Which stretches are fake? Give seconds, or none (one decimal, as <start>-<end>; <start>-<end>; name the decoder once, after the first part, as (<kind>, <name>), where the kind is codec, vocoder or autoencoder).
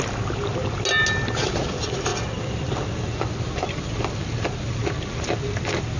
none